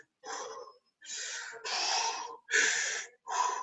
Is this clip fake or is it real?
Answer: real